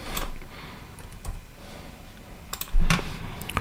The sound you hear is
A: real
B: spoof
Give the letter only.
B